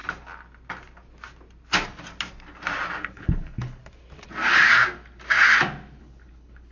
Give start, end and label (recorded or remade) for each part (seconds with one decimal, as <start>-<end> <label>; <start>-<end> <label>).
0.0-3.0 recorded; 3.0-3.8 remade; 3.8-6.0 recorded; 6.0-6.7 remade